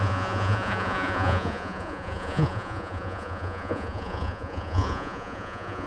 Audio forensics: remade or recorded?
remade